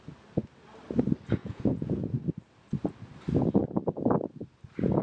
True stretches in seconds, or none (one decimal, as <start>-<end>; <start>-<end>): 0.0-1.4; 2.1-5.0